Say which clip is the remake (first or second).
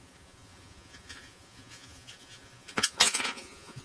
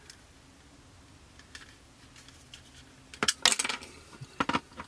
first